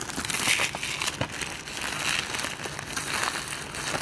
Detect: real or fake real